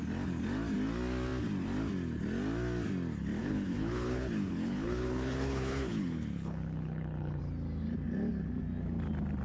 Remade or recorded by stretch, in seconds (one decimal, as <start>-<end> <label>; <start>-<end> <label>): 0.0-3.4 recorded; 3.4-7.4 remade; 7.4-9.4 recorded